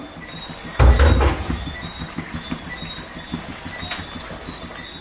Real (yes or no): yes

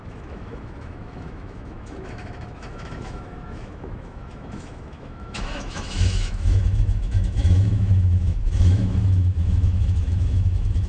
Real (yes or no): no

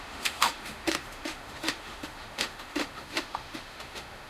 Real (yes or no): no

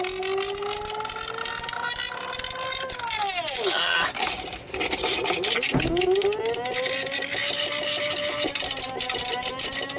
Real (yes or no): yes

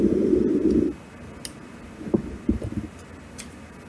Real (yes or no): yes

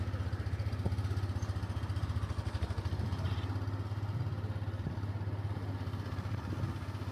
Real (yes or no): yes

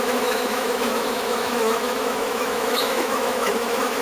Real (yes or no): no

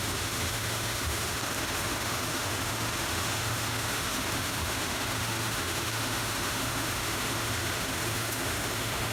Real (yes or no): no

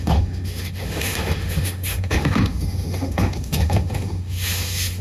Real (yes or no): no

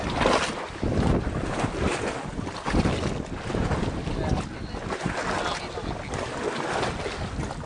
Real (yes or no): yes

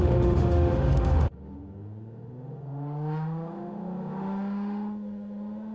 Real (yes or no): no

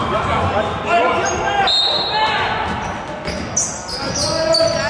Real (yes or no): yes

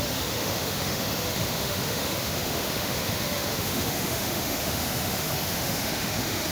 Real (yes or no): no